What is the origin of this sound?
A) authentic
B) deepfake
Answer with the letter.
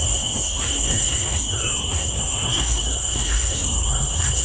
B